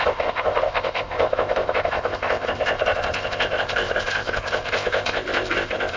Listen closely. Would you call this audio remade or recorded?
remade